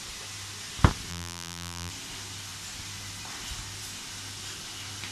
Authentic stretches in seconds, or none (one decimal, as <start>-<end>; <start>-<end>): 0.0-1.1; 1.9-5.1